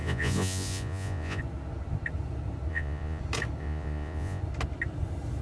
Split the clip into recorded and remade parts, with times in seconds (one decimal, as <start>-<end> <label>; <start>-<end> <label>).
0.0-1.4 remade; 1.4-2.7 recorded; 2.7-3.2 remade; 3.2-3.6 recorded; 3.6-4.4 remade; 4.4-5.4 recorded